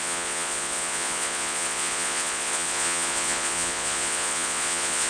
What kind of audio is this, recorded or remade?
remade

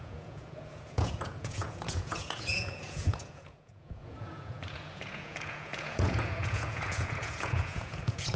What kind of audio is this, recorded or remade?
remade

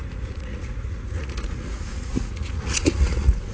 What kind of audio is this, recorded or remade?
remade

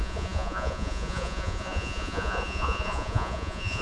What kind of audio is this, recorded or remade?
remade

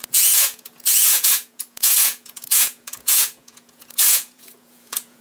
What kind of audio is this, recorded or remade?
remade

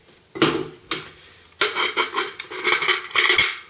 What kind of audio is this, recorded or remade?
recorded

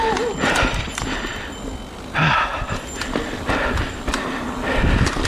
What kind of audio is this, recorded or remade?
recorded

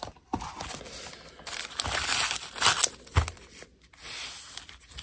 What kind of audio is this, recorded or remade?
recorded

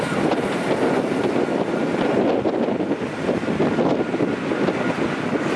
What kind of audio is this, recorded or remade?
recorded